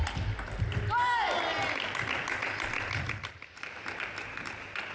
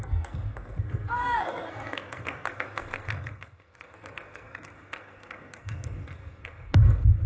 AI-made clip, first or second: second